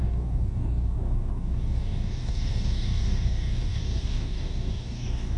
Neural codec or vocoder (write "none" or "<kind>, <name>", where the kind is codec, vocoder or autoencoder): codec, DAC